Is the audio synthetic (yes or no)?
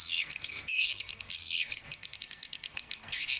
yes